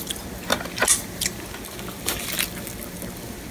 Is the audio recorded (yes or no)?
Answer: yes